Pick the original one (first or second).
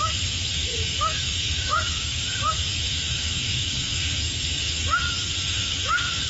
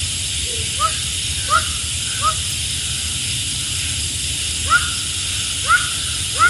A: second